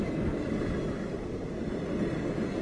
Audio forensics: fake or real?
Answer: real